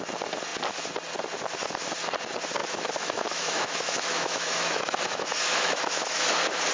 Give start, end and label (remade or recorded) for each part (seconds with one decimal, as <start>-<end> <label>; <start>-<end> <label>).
0.0-2.6 recorded; 2.6-6.2 remade; 6.2-6.7 recorded